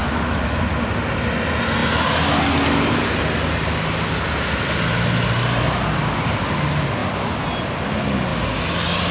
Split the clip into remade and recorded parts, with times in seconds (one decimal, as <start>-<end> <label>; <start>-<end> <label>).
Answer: 0.0-0.6 remade; 0.6-9.1 recorded